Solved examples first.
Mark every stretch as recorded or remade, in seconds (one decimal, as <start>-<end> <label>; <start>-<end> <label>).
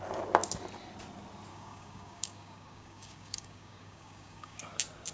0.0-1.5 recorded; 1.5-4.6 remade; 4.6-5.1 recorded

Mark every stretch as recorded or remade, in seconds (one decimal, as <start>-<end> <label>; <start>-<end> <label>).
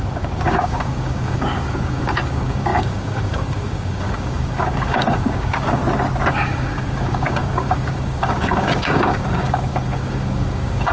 0.0-5.8 remade; 5.8-6.3 recorded; 6.3-10.9 remade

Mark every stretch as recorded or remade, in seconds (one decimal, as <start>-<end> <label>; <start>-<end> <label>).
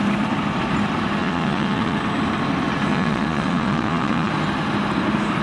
0.0-1.2 recorded; 1.2-2.0 remade; 2.0-2.9 recorded; 2.9-4.3 remade; 4.3-5.4 recorded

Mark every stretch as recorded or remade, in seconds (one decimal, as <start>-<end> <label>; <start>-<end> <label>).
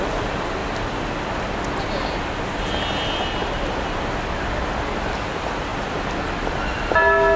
0.0-7.4 recorded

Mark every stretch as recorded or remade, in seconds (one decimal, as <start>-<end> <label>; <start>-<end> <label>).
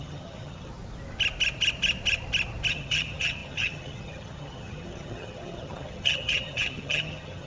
0.0-0.7 remade; 0.7-2.7 recorded; 2.7-7.5 remade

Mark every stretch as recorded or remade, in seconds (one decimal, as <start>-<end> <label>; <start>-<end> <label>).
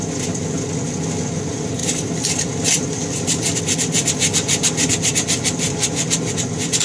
0.0-1.8 recorded; 1.8-3.6 remade; 3.6-6.8 recorded